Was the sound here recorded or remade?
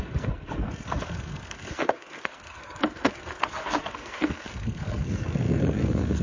remade